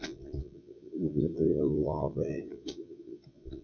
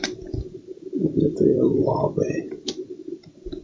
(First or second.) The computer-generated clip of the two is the first